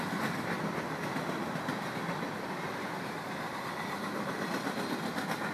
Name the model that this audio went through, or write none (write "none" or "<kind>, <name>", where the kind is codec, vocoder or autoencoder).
none